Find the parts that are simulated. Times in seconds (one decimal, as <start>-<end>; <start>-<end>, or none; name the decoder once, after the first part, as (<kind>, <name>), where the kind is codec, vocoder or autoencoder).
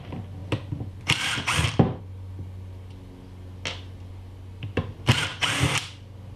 none